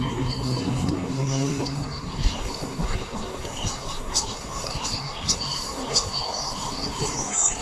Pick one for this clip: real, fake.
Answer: fake